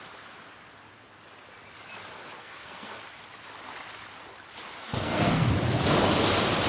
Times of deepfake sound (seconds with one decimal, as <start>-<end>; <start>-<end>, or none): 2.4-3.0; 4.8-5.5